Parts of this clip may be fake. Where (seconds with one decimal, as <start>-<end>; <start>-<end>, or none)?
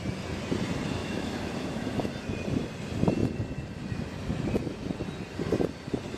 1.0-2.1